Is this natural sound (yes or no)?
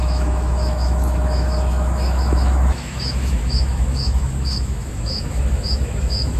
no